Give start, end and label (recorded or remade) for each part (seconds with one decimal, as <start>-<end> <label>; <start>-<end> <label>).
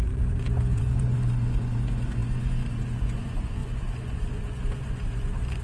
0.0-5.6 remade